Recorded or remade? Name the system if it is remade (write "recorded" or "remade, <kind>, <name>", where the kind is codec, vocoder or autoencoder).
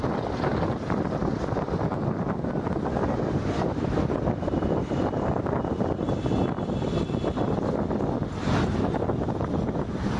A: recorded